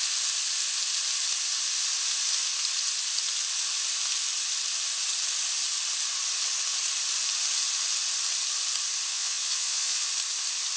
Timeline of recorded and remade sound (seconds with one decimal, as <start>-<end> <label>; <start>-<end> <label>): 0.0-9.1 recorded; 9.1-10.1 remade; 10.1-10.8 recorded